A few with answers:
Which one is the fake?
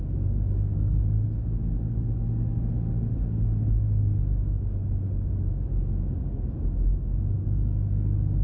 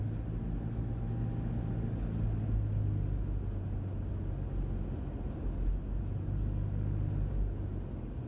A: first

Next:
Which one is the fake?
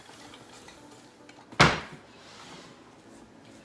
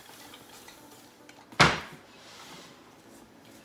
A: second